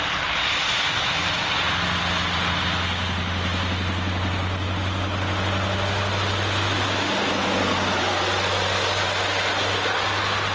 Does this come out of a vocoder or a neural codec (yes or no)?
no